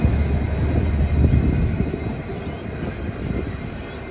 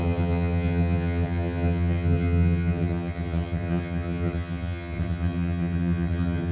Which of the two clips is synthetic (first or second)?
second